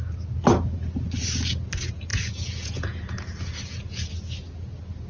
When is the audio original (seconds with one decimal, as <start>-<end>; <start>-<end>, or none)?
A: 0.0-2.1; 4.1-5.1